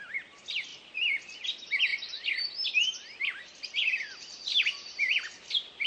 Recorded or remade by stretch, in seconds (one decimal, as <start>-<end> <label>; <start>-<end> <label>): 0.0-5.9 recorded